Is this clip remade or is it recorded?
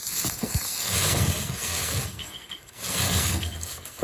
remade